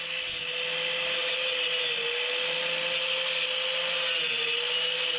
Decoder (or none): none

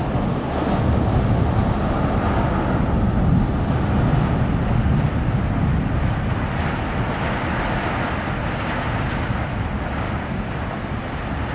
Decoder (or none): none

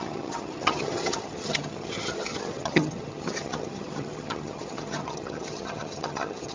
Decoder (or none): vocoder, HiFi-GAN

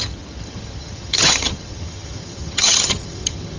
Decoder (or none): vocoder, HiFi-GAN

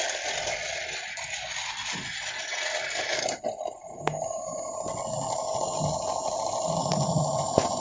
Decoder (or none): none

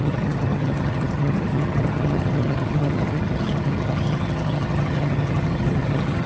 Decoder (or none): vocoder, HiFi-GAN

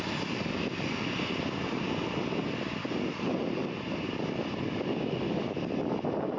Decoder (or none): none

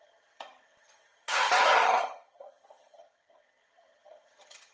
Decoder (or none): vocoder, HiFi-GAN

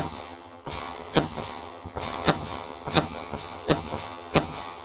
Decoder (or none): vocoder, HiFi-GAN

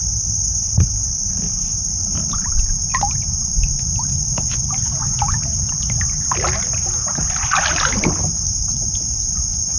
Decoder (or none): none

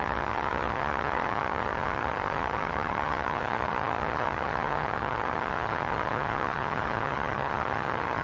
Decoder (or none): vocoder, HiFi-GAN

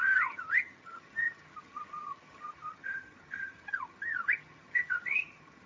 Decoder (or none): vocoder, HiFi-GAN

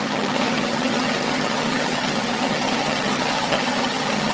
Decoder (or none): vocoder, HiFi-GAN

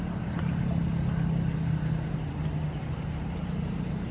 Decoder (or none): none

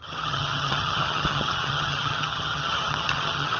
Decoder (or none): vocoder, HiFi-GAN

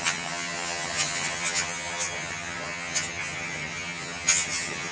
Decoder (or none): vocoder, HiFi-GAN